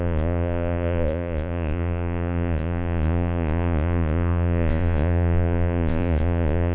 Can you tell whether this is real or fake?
fake